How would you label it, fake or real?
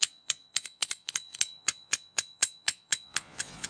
fake